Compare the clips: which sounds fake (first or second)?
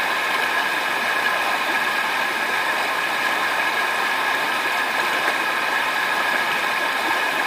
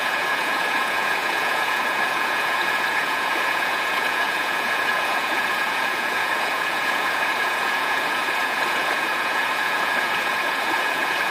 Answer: second